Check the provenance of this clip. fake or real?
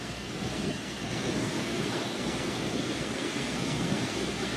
fake